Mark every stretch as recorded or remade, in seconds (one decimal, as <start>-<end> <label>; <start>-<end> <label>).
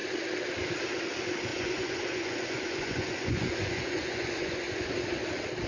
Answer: 0.0-1.5 recorded; 1.5-4.9 remade; 4.9-5.7 recorded